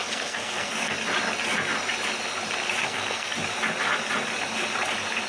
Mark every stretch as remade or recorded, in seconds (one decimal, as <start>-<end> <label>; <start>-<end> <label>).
0.0-0.9 remade; 0.9-2.8 recorded; 2.8-3.3 remade; 3.3-5.3 recorded